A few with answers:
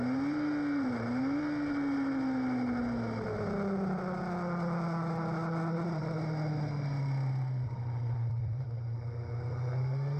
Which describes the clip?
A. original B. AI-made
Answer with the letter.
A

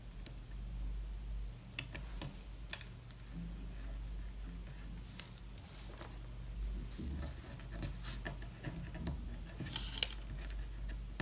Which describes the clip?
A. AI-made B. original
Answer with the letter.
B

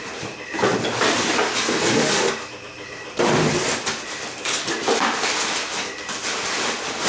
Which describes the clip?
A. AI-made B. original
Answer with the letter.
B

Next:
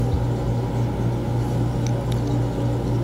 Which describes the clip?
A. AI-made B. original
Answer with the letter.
B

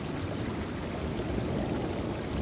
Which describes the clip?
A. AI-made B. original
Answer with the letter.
B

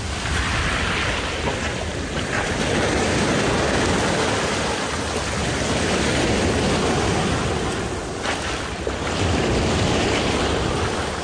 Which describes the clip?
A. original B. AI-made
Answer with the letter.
A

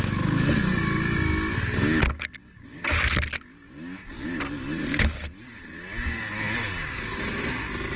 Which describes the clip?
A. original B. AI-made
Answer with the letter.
A